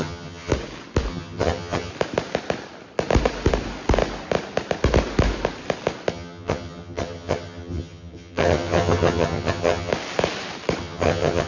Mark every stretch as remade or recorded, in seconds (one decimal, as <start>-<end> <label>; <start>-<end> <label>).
0.0-0.5 remade; 0.5-1.1 recorded; 1.1-1.9 remade; 1.9-6.1 recorded; 6.1-9.9 remade; 9.9-10.8 recorded; 10.8-11.5 remade